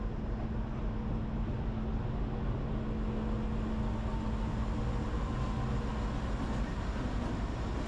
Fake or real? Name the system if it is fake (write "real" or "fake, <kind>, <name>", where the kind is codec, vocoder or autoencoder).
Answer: real